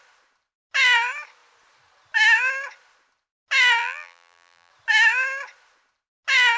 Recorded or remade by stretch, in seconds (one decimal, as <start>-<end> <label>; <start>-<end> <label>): 0.0-3.8 recorded; 3.8-4.7 remade; 4.7-6.6 recorded